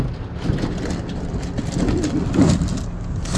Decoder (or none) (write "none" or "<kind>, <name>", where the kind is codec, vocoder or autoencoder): none